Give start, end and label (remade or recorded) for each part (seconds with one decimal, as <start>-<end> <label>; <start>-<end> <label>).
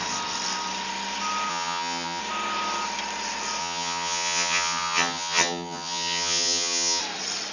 0.0-1.5 recorded; 1.5-2.2 remade; 2.2-3.6 recorded; 3.6-7.0 remade; 7.0-7.5 recorded